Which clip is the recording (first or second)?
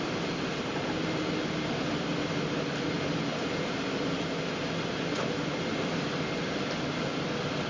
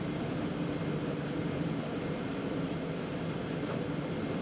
first